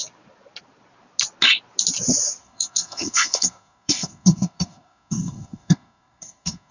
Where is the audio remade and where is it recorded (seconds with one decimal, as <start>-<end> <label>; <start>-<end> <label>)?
0.0-2.4 recorded; 2.4-6.7 remade